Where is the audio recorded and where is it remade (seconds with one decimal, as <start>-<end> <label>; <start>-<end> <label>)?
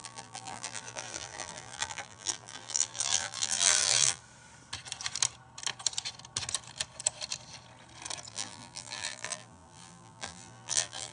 0.0-4.2 remade; 4.2-8.3 recorded; 8.3-11.1 remade